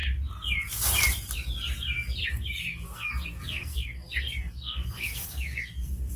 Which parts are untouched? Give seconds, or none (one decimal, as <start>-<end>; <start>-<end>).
0.0-2.2